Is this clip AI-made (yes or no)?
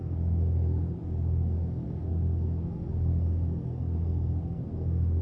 yes